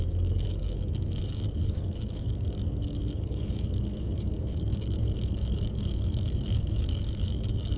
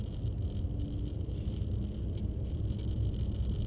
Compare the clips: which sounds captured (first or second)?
second